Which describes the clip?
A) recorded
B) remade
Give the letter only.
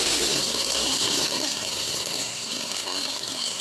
B